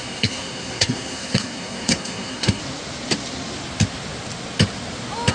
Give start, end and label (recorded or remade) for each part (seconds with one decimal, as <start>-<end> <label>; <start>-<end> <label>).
0.0-2.6 remade; 2.6-5.3 recorded